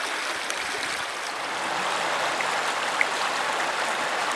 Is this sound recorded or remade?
recorded